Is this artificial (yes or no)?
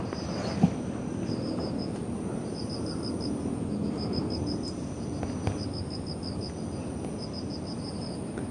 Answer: no